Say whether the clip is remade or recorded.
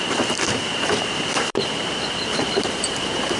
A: remade